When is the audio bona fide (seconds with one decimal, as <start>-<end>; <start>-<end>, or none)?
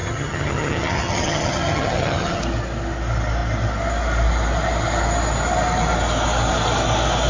2.4-7.3